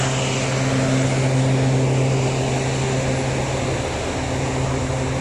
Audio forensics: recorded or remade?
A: recorded